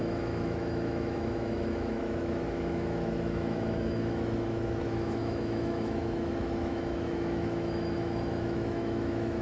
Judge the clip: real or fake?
fake